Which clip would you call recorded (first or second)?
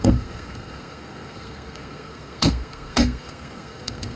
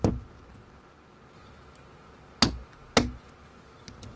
second